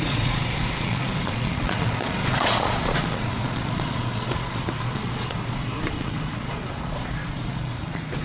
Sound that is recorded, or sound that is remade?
remade